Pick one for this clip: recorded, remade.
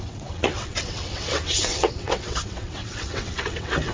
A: remade